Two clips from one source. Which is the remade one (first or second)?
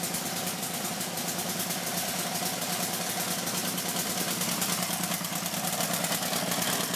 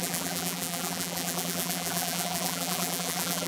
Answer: second